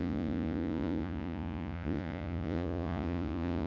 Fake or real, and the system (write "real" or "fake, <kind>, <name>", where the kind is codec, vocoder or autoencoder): fake, vocoder, Vocos